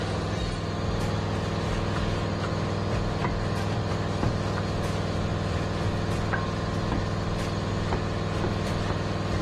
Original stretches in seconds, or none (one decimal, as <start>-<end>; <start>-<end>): 0.0-9.4